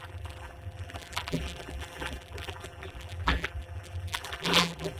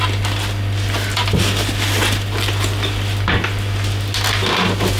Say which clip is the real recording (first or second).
second